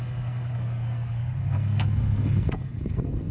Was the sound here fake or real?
fake